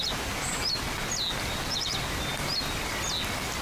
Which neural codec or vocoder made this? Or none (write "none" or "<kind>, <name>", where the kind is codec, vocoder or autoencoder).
none